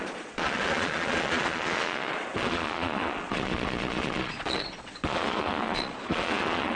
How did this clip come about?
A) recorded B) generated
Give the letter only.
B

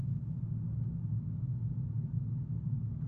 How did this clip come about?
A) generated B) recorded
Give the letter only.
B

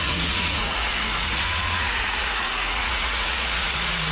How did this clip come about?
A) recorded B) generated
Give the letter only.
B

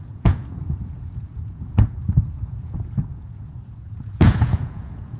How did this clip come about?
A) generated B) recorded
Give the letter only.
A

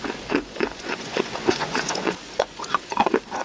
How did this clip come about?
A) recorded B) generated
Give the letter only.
B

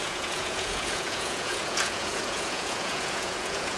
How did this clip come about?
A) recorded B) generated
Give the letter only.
B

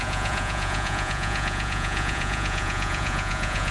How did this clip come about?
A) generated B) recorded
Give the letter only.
A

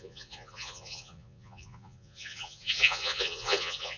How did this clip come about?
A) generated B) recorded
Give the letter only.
A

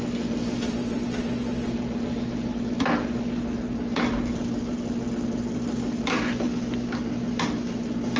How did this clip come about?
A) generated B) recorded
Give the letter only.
B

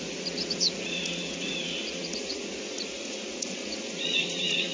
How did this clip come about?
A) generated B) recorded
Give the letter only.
A